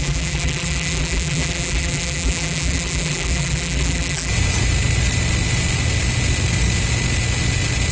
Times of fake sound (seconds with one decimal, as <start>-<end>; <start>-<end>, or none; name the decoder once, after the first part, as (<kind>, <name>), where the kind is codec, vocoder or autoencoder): 0.0-4.3 (vocoder, BigVGAN v2)